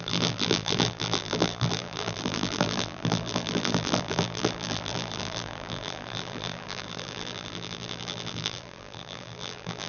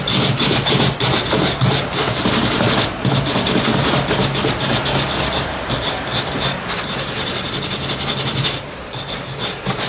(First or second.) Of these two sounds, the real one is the second